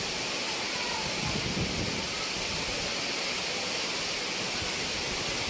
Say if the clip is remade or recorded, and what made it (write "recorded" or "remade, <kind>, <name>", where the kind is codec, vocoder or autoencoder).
recorded